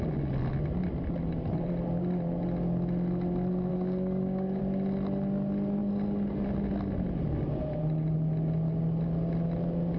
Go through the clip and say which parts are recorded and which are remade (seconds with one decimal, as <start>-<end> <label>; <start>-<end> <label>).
0.0-3.7 recorded; 3.7-4.6 remade; 4.6-10.0 recorded